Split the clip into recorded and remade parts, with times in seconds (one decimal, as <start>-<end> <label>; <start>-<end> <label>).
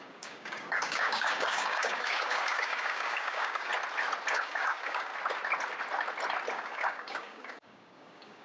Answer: 0.0-3.7 remade; 3.7-4.3 recorded; 4.3-5.1 remade; 5.1-6.5 recorded; 6.5-8.4 remade